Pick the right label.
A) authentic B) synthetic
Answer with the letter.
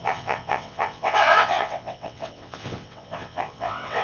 B